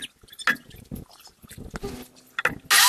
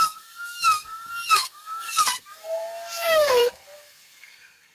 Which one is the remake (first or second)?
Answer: second